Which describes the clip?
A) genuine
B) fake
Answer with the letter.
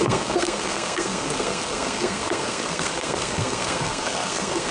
B